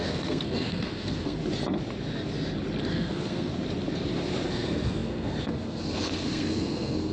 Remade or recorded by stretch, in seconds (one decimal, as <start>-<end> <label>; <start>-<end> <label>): 0.0-1.4 remade; 1.4-2.9 recorded; 2.9-3.5 remade; 3.5-4.5 recorded; 4.5-7.1 remade